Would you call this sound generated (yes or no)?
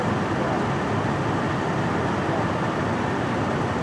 no